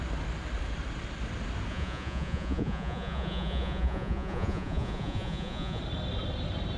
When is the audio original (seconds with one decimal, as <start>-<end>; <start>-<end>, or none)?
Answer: 0.0-1.7; 5.8-6.8